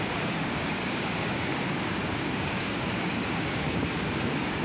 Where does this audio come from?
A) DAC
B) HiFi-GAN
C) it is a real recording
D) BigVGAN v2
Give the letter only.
A